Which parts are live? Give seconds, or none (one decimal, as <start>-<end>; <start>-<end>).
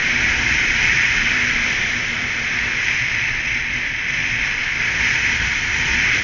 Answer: 0.0-6.2